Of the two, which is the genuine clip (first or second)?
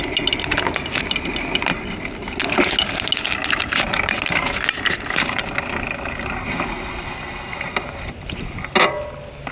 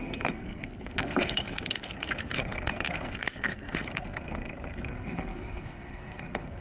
first